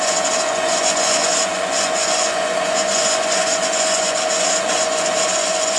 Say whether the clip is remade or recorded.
remade